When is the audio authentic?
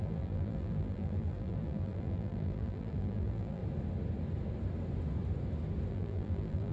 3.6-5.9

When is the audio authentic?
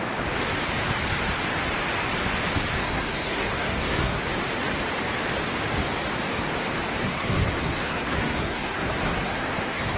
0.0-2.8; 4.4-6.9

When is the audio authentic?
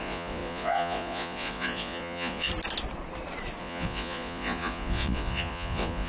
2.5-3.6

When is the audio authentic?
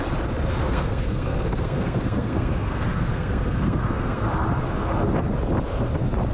0.0-0.5; 4.3-6.3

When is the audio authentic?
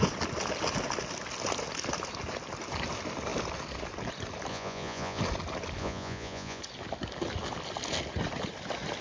0.0-4.5; 5.2-5.8; 6.6-9.0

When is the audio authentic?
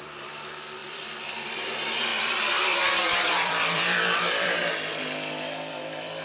0.0-0.8; 1.5-2.1; 5.8-6.2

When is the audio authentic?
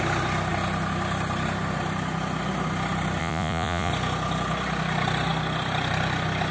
0.0-3.2; 3.9-6.5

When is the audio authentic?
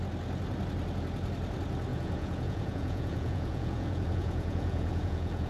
0.0-1.9